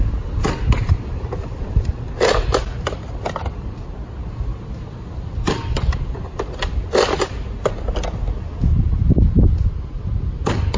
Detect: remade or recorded recorded